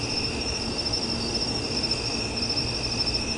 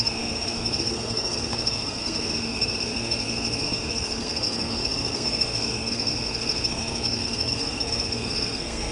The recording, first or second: first